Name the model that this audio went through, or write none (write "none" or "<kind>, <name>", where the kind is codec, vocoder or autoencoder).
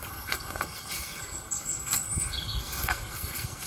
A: codec, SNAC